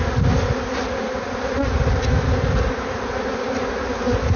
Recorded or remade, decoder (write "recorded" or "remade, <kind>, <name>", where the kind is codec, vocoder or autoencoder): recorded